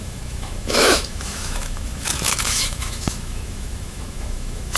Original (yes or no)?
no